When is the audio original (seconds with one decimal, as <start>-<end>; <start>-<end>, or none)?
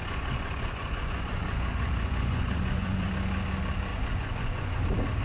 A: 3.1-3.9; 4.8-5.2